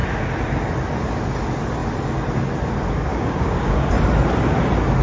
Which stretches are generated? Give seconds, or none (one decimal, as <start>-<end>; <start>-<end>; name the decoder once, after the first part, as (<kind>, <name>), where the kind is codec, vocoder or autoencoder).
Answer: 3.1-3.9 (codec, DAC)